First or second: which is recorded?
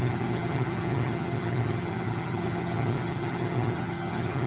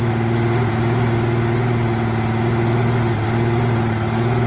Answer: second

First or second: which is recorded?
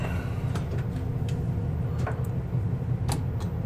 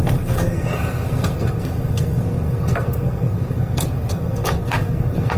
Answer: first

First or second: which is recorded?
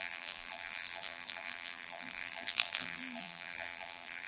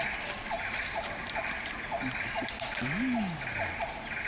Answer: second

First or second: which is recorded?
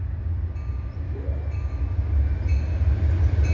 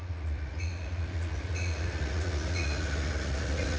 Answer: first